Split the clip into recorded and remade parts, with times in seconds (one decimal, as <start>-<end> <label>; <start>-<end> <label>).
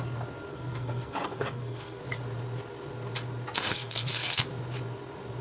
0.0-0.5 recorded; 0.5-2.0 remade; 2.0-3.7 recorded; 3.7-4.5 remade; 4.5-5.4 recorded